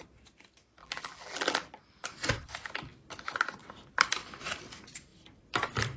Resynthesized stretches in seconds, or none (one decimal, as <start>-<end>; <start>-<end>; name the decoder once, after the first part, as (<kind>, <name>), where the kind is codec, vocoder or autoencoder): 0.8-1.7 (vocoder, BigVGAN v2)